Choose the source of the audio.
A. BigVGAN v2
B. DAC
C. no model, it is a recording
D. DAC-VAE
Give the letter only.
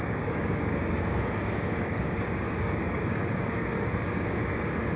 B